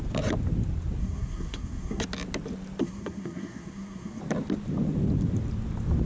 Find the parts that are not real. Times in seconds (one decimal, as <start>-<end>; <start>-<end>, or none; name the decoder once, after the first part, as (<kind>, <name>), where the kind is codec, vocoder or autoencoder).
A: 1.0-2.0 (codec, SNAC); 2.8-4.2

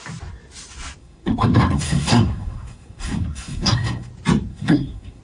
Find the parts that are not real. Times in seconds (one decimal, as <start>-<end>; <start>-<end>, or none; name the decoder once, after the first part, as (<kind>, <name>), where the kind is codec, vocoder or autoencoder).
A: 1.0-4.1 (codec, SNAC); 4.5-5.2

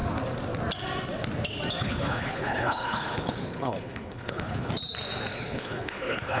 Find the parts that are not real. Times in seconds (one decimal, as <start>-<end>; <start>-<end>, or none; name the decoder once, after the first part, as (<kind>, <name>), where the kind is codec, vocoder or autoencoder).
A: 1.8-4.7 (codec, HILCodec); 5.3-6.4

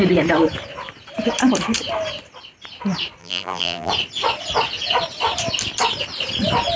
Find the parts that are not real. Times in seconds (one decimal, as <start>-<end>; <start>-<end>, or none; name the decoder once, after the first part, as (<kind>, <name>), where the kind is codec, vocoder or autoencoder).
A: 3.2-3.9 (vocoder, BigVGAN v2)

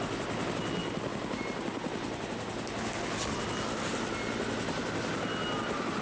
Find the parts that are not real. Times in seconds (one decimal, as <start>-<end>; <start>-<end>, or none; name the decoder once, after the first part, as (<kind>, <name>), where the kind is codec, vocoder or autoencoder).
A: none

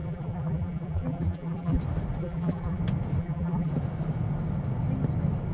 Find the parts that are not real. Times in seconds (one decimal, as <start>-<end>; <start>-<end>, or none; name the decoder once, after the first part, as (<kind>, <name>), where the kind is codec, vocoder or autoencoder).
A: 0.0-1.8 (vocoder, BigVGAN v2); 2.2-2.8; 3.2-3.7

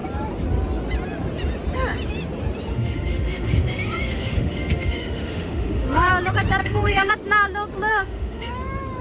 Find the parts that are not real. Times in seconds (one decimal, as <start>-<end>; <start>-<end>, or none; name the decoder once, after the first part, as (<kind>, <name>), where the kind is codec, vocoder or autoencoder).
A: 2.7-6.1 (autoencoder, DAC-VAE); 6.6-7.1; 7.9-8.5